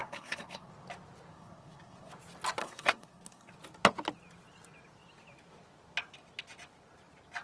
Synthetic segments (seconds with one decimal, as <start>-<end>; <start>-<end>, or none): 0.0-0.7; 1.3-2.1; 2.6-3.5